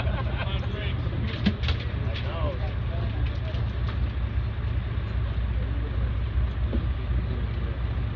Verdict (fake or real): real